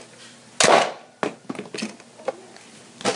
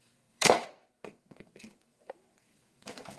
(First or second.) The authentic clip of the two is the first